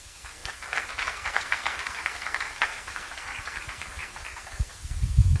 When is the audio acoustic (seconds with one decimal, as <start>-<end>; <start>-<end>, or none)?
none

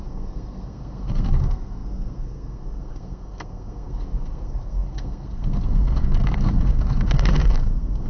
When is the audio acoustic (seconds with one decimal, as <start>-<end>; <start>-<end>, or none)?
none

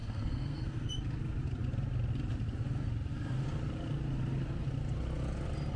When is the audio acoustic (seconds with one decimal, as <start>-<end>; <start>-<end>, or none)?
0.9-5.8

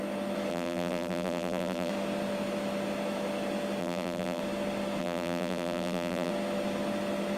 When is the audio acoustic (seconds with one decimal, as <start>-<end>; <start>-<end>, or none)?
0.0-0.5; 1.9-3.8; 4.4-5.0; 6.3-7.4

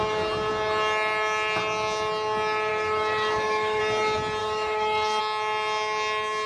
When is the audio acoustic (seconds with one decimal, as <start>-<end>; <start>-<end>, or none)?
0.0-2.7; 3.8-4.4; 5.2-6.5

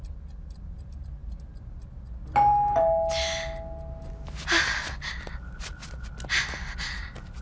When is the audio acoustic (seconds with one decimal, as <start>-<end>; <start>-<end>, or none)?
0.0-7.4